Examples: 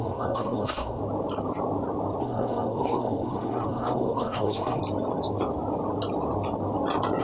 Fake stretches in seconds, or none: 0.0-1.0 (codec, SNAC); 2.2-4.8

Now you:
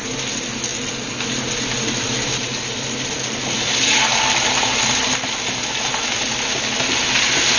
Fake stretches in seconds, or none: none

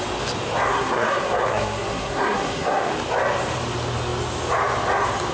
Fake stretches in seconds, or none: 0.7-2.9 (codec, SNAC)

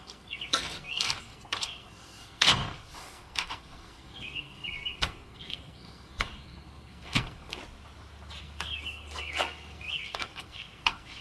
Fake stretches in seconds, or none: 0.0-7.6 (codec, SNAC); 8.4-11.2

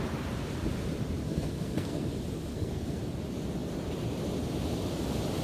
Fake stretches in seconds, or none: 1.2-2.1 (codec, SNAC); 2.5-3.0

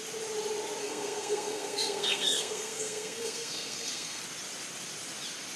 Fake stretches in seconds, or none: 0.8-4.2 (codec, SNAC)

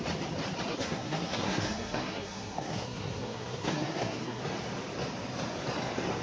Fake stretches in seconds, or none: 0.7-4.4 (codec, SNAC)